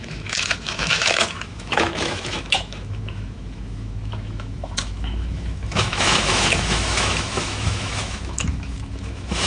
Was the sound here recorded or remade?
remade